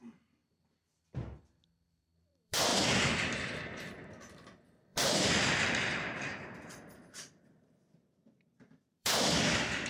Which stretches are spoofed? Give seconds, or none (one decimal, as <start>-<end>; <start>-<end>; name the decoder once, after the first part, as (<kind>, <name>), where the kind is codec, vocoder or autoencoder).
0.0-2.7 (vocoder, BigVGAN v2); 4.2-9.9